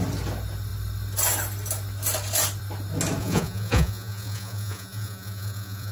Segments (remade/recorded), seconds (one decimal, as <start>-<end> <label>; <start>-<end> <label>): 0.0-3.2 recorded; 3.2-5.9 remade